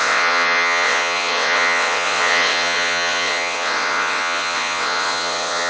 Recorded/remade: remade